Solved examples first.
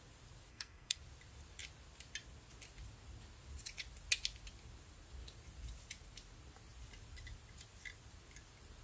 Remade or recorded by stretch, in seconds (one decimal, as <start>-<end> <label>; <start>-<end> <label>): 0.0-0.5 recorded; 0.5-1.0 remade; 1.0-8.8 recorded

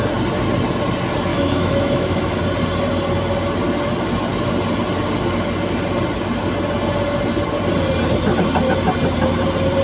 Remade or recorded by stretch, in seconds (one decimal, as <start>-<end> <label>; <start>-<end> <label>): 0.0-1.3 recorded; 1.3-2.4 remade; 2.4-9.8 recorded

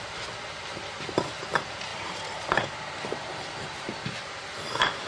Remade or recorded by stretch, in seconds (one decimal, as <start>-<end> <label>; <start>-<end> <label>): 0.0-1.9 recorded; 1.9-5.1 remade